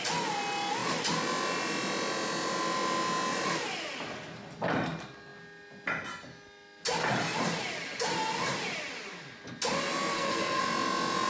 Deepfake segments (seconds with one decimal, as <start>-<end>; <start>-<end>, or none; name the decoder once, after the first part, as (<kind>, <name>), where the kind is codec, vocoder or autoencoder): 10.1-10.6 (codec, SNAC)